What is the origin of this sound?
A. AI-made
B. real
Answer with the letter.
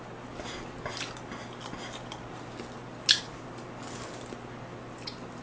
B